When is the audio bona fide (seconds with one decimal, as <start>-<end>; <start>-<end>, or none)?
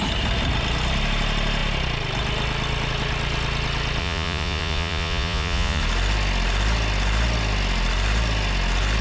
0.0-4.0; 5.8-9.0